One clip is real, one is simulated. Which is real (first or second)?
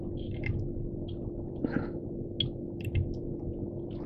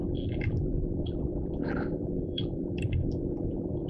first